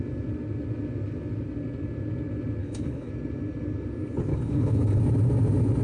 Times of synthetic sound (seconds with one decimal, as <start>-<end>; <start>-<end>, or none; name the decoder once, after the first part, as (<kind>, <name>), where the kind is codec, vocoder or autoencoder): 2.6-3.1 (codec, HILCodec); 4.3-5.0